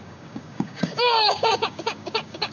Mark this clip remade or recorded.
remade